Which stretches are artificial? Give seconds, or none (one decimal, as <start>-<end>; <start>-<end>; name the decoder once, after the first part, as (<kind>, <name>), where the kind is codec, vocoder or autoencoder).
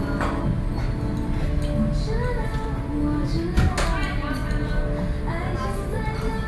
none